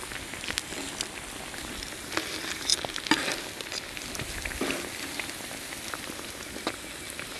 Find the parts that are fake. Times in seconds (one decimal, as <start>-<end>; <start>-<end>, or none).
none